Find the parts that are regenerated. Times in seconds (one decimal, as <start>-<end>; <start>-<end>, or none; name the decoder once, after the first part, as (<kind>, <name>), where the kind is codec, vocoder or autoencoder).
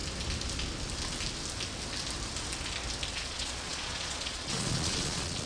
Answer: 3.1-5.5 (vocoder, Vocos)